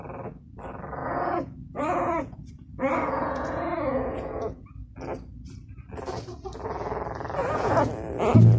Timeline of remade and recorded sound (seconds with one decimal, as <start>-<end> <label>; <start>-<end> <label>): 0.0-1.0 recorded; 1.0-2.5 remade; 2.5-3.2 recorded; 3.2-4.7 remade; 4.7-7.4 recorded; 7.4-7.9 remade; 7.9-8.6 recorded